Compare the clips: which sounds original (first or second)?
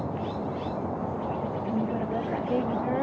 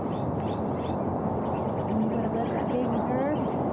second